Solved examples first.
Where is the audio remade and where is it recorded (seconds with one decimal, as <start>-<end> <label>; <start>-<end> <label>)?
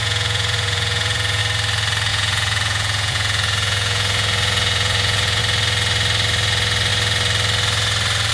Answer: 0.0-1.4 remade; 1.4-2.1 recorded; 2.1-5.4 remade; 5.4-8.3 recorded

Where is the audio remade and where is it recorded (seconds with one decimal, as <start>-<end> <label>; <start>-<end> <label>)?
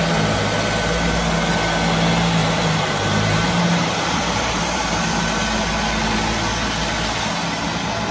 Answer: 0.0-2.4 recorded; 2.4-5.2 remade; 5.2-8.1 recorded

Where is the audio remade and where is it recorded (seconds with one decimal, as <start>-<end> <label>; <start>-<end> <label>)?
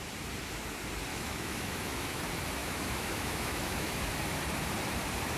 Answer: 0.0-1.1 recorded; 1.1-2.2 remade; 2.2-2.6 recorded; 2.6-4.1 remade; 4.1-5.4 recorded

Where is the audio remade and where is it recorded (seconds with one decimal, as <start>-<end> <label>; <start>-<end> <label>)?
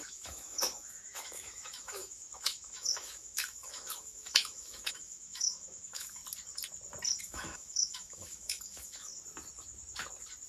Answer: 0.0-6.2 remade; 6.2-7.2 recorded; 7.2-9.1 remade; 9.1-10.5 recorded